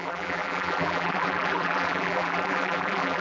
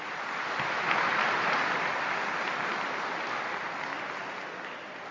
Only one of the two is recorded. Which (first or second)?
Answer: second